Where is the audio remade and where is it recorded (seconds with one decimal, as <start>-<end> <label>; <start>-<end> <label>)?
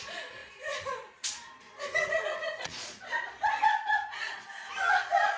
0.0-4.5 remade; 4.5-5.0 recorded; 5.0-5.4 remade